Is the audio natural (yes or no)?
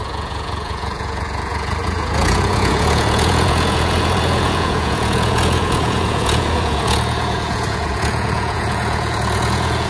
no